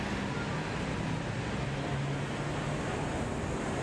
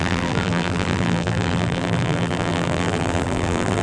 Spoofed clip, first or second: second